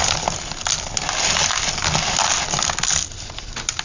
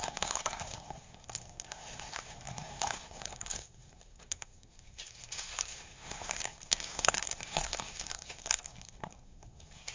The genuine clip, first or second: first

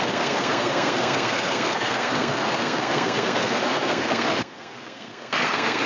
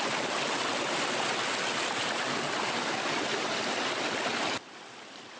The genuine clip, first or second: second